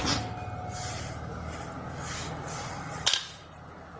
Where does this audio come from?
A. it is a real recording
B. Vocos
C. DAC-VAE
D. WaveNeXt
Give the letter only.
A